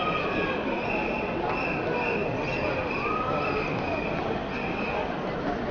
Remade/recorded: remade